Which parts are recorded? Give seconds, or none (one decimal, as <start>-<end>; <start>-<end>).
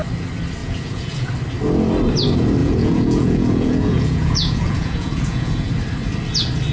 0.0-0.6; 1.3-2.6; 5.7-6.7